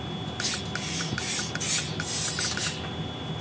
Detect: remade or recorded recorded